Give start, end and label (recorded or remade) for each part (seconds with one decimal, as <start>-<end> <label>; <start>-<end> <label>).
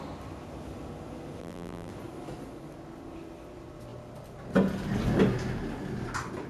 0.0-1.4 recorded; 1.4-1.9 remade; 1.9-6.5 recorded